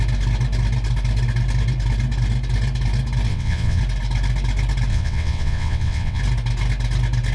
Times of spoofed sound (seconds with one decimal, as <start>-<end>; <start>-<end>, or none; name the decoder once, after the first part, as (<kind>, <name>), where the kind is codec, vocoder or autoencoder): 3.3-3.8 (vocoder, WaveNeXt); 4.9-6.2